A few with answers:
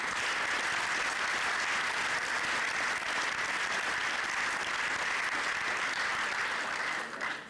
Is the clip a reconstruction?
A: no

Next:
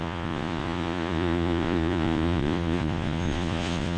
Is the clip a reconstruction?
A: yes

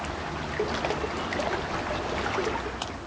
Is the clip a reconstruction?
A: no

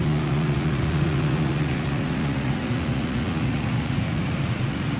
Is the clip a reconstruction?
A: yes